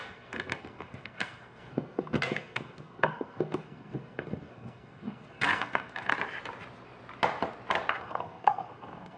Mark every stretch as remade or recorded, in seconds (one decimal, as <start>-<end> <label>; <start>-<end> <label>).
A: 0.0-6.1 remade; 6.1-8.0 recorded; 8.0-9.2 remade

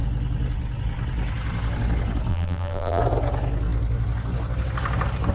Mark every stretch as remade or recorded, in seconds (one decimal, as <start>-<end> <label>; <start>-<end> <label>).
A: 0.0-2.3 recorded; 2.3-3.0 remade; 3.0-5.3 recorded